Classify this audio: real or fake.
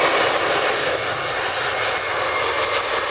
real